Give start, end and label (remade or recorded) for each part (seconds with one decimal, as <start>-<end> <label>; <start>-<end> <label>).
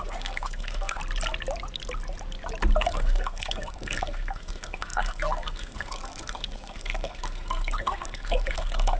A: 0.0-1.0 remade; 1.0-2.8 recorded; 2.8-9.0 remade